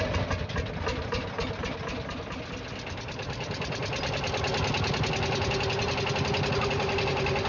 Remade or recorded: recorded